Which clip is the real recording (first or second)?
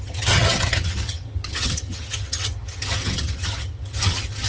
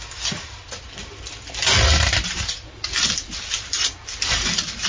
second